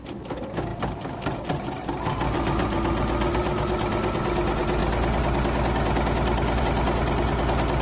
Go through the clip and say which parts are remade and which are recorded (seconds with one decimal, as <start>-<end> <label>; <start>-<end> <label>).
0.0-7.8 recorded